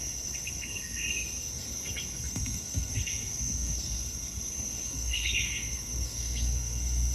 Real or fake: fake